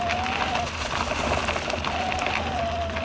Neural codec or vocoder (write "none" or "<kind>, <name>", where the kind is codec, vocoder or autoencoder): none